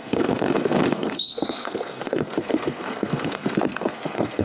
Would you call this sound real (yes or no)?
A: no